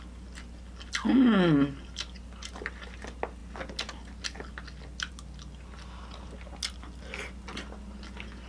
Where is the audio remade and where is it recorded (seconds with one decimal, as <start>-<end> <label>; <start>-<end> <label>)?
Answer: 0.0-8.5 recorded

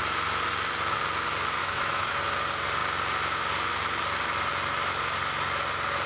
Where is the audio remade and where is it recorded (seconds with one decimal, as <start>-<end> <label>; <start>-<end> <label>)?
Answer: 0.0-1.6 recorded; 1.6-2.2 remade; 2.2-6.1 recorded

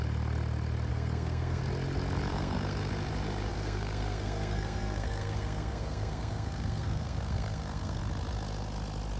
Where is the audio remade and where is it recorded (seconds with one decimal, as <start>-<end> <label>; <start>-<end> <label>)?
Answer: 0.0-0.9 recorded; 0.9-1.6 remade; 1.6-2.3 recorded; 2.3-2.9 remade; 2.9-3.5 recorded; 3.5-8.0 remade; 8.0-9.2 recorded

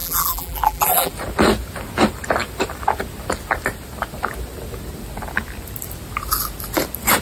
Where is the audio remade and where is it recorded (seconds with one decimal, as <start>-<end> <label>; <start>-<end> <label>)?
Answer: 0.0-1.1 remade; 1.1-7.2 recorded

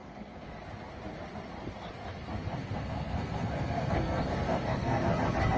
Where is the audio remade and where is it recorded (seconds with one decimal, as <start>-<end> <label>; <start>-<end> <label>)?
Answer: 0.0-0.6 remade; 0.6-2.6 recorded; 2.6-5.1 remade; 5.1-5.6 recorded

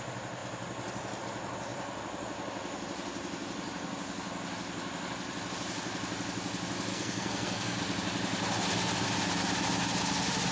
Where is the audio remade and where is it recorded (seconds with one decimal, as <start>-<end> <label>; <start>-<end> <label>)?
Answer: 0.0-6.9 recorded; 6.9-7.8 remade; 7.8-10.5 recorded

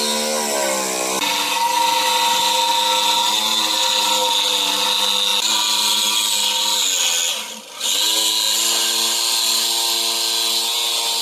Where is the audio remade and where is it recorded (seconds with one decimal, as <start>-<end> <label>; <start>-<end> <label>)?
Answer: 0.0-11.2 recorded